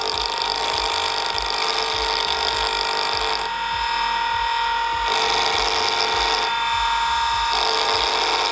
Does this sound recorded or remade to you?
recorded